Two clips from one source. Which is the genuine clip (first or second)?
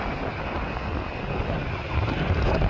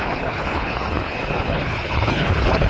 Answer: first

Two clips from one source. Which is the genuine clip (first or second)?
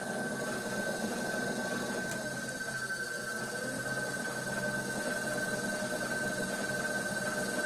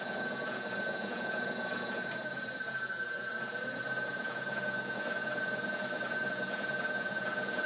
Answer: first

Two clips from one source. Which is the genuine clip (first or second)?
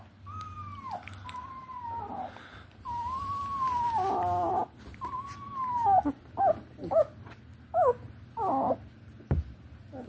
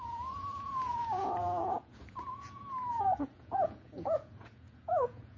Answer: first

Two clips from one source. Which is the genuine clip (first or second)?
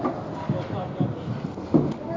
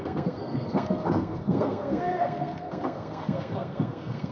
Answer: first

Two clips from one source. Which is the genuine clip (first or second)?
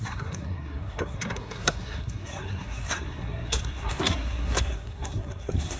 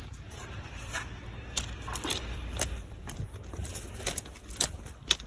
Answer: second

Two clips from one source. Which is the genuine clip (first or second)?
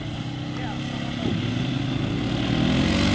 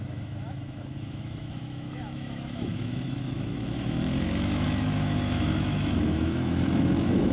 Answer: first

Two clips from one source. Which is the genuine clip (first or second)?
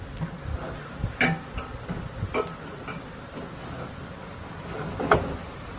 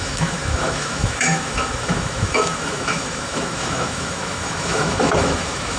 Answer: first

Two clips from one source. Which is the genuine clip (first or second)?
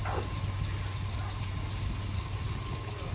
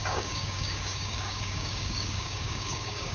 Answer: first